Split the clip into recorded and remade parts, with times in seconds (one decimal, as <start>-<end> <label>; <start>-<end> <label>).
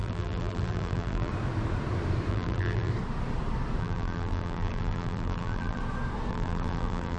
0.0-1.3 remade; 1.3-2.3 recorded; 2.3-2.9 remade; 2.9-3.8 recorded; 3.8-5.8 remade; 5.8-6.3 recorded; 6.3-7.2 remade